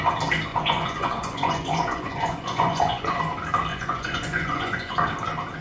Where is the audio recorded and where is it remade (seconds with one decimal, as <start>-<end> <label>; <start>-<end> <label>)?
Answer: 0.0-0.5 recorded; 0.5-3.2 remade; 3.2-3.7 recorded; 3.7-5.0 remade; 5.0-5.6 recorded